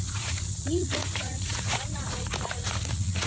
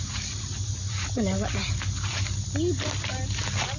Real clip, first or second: second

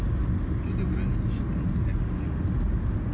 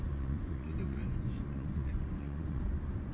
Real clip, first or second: first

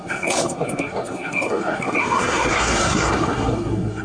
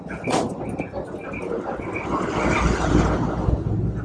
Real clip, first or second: second